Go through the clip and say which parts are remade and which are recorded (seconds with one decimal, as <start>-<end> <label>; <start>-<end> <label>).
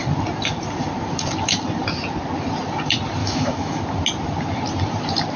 0.0-3.2 recorded; 3.2-3.8 remade; 3.8-5.4 recorded